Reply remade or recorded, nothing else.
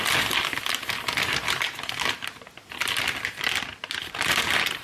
recorded